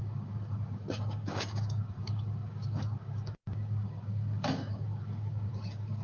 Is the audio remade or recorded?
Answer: remade